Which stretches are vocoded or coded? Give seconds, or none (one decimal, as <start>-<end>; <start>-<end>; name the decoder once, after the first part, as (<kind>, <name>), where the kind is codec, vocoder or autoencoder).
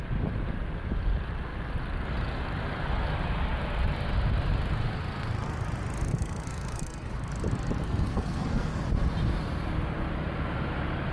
6.1-7.1 (codec, SNAC); 7.8-8.8